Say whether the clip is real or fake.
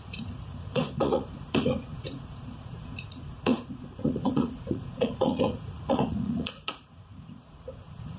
fake